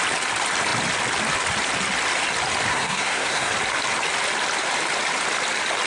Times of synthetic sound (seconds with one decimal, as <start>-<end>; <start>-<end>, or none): 2.7-3.5